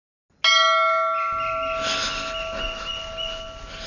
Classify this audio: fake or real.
real